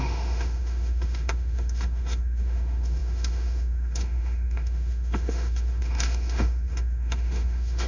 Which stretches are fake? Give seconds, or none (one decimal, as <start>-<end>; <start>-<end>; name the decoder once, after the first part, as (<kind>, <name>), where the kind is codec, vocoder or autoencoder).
0.0-7.9 (autoencoder, DAC-VAE)